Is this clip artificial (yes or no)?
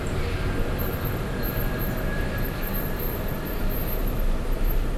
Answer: yes